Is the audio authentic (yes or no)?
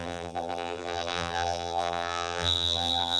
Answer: no